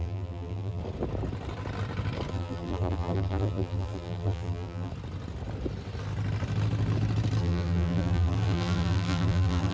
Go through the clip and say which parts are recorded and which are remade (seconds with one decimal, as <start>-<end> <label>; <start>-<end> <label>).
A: 0.0-0.8 remade; 0.8-2.3 recorded; 2.3-4.9 remade; 4.9-7.4 recorded; 7.4-9.7 remade